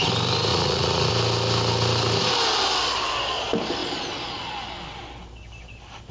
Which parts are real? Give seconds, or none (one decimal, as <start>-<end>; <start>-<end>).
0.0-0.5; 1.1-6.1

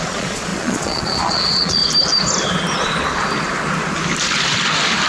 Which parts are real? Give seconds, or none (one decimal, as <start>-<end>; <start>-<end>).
1.8-5.1

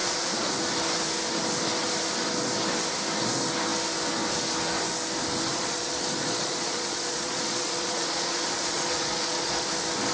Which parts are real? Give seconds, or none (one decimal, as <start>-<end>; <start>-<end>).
0.5-5.5; 9.7-10.1

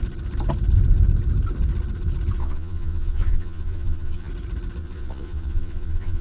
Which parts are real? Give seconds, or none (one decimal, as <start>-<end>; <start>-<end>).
0.0-2.4; 4.3-4.8

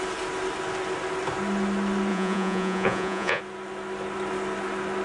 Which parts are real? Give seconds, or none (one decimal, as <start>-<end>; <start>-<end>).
0.0-2.1; 3.4-5.0

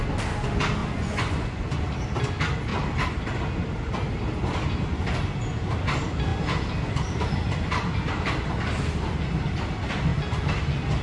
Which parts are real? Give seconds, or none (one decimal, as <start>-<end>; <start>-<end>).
0.0-0.8; 1.9-11.0

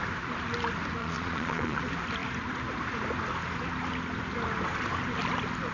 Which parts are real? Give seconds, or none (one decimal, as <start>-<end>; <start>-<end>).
0.0-1.0; 1.8-5.7

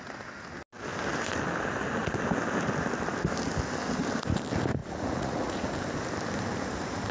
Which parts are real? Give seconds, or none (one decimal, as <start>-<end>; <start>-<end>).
0.0-4.8; 5.7-7.1